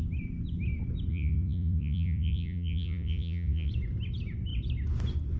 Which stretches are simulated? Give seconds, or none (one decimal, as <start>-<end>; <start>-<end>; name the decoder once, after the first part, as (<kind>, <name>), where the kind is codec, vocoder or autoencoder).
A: 1.1-3.7 (vocoder, Vocos)